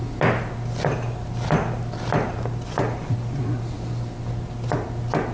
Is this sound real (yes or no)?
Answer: yes